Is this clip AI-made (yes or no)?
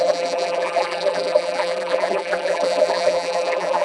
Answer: yes